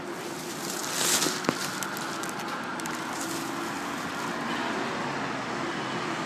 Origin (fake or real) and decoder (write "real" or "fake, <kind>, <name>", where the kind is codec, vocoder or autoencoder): real